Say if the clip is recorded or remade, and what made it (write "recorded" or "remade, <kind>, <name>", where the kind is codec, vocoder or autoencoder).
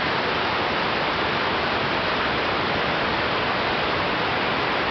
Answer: recorded